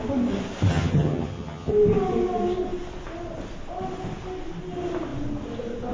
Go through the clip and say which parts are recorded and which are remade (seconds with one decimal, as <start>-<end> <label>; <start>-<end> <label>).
0.0-0.7 recorded; 0.7-1.7 remade; 1.7-5.9 recorded